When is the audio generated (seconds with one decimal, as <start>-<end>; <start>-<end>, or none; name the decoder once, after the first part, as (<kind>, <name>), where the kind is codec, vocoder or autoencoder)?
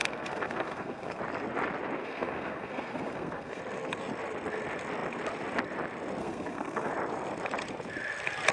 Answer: 0.0-1.2 (codec, SNAC); 2.0-3.6; 6.2-6.9